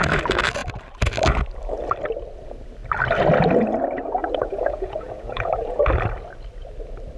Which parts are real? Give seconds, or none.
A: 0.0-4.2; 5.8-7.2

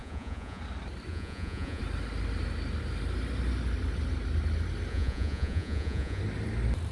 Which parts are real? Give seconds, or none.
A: 0.6-1.1; 1.8-4.9; 6.2-6.9

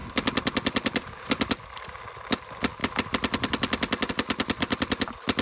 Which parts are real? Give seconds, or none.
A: 0.0-5.4

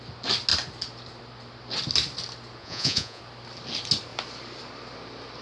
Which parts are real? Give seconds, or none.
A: 0.0-2.6; 3.2-5.4